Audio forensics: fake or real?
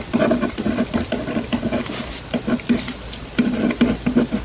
real